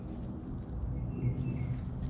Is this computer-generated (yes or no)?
no